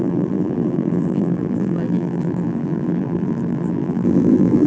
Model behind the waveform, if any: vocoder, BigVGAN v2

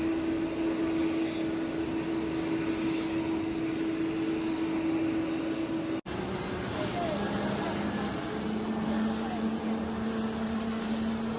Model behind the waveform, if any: none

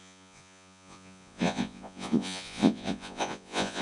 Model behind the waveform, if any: vocoder, Vocos